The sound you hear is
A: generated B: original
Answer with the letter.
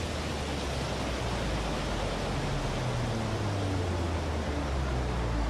B